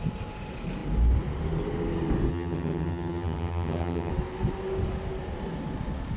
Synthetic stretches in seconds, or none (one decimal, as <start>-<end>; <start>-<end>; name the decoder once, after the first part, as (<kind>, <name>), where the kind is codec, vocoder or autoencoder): 2.3-4.1 (vocoder, HiFi-GAN)